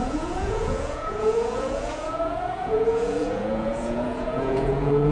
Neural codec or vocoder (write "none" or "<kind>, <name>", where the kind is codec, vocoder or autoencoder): vocoder, Vocos